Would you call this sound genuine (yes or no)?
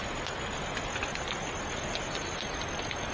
yes